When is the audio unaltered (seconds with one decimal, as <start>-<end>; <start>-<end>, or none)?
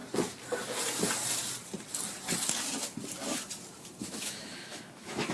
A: 0.0-4.0